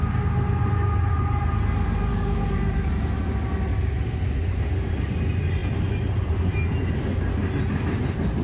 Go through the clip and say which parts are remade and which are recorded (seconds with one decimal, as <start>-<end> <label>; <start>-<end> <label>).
0.0-2.1 recorded; 2.1-2.9 remade; 2.9-8.4 recorded